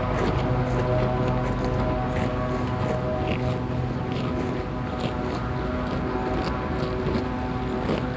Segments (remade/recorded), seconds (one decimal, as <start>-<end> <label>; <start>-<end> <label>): 0.0-8.2 recorded